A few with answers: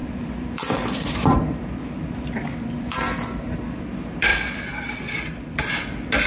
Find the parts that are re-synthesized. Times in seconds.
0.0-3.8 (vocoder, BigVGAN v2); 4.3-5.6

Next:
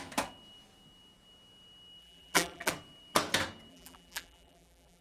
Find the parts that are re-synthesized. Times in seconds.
2.0-2.7 (vocoder, BigVGAN v2); 3.7-5.0

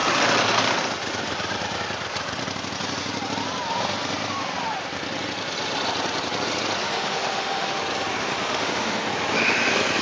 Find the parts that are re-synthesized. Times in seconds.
6.8-7.8 (autoencoder, DAC-VAE); 8.2-9.1

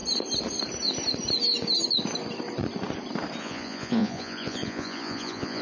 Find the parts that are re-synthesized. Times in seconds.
3.4-5.6 (vocoder, Vocos)

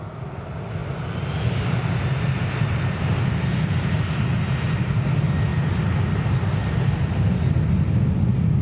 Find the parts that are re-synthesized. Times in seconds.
none

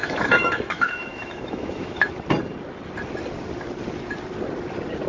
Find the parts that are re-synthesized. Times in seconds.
0.0-2.1 (autoencoder, DAC-VAE)

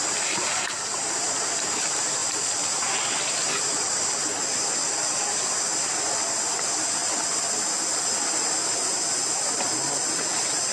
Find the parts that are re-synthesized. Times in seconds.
none